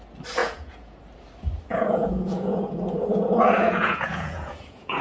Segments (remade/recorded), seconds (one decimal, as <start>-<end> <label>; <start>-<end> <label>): 0.0-0.4 recorded; 0.4-1.0 remade; 1.0-1.7 recorded; 1.7-5.0 remade